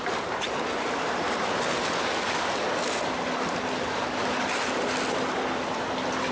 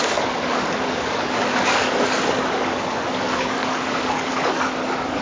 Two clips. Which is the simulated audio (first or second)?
second